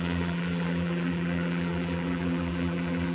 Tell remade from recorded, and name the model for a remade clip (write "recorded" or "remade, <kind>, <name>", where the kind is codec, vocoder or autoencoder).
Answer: remade, vocoder, BigVGAN v2